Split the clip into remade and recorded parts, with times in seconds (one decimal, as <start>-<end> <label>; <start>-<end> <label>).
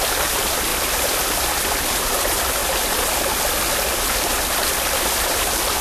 0.0-0.7 remade; 0.7-1.6 recorded; 1.6-2.6 remade; 2.6-5.8 recorded